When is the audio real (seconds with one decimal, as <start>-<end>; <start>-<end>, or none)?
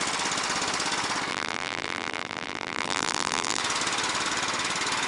0.0-1.3; 3.6-5.1